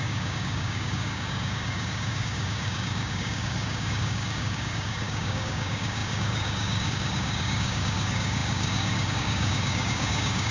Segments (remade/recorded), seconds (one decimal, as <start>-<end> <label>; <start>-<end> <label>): 0.0-10.5 remade